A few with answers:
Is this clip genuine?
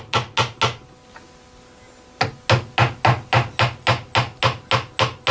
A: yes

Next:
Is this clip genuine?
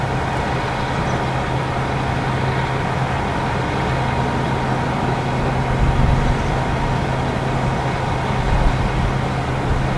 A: yes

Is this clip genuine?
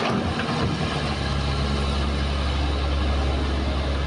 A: yes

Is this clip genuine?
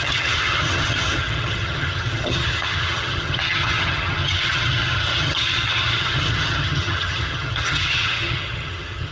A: no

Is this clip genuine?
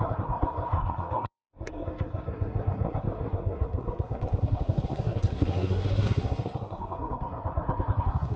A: no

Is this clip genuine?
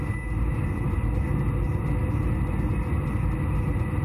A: yes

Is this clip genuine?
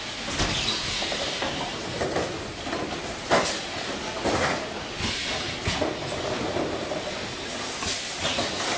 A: yes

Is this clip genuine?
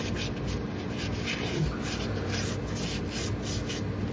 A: yes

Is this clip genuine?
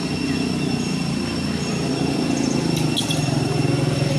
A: yes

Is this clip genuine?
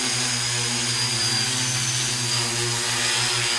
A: yes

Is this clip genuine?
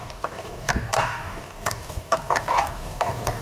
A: no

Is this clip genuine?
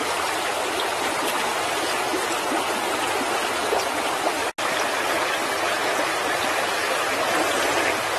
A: yes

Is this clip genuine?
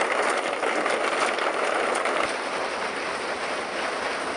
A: yes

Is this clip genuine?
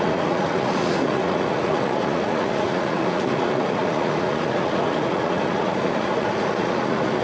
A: no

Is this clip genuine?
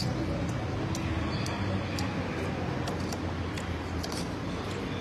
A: yes